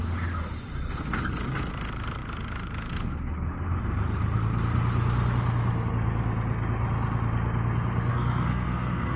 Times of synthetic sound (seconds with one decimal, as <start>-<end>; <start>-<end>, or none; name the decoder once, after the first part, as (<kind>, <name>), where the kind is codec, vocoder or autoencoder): 8.1-9.2 (codec, SNAC)